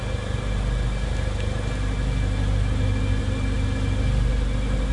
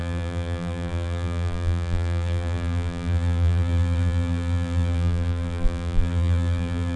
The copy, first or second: second